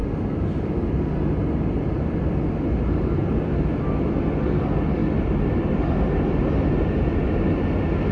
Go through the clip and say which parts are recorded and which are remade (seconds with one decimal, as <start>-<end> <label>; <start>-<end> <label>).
0.0-2.5 remade; 2.5-3.2 recorded; 3.2-4.1 remade; 4.1-8.1 recorded